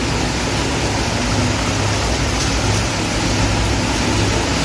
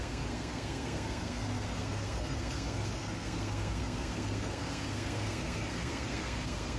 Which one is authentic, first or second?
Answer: first